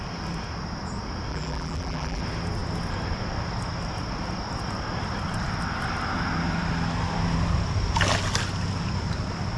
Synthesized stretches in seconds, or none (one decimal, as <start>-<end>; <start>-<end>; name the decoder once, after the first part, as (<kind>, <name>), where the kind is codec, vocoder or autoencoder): 1.3-2.2 (vocoder, BigVGAN v2)